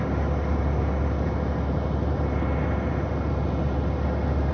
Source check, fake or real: real